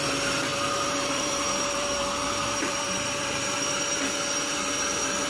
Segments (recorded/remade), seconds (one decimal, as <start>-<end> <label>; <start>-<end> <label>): 0.0-0.5 recorded; 0.5-3.7 remade; 3.7-5.3 recorded